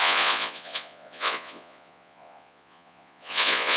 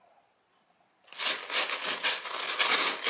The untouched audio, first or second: second